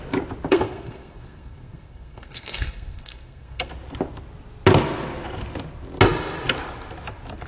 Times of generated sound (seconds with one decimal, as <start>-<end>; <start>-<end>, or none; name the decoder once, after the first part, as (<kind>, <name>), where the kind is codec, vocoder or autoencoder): 0.5-3.7 (codec, SNAC)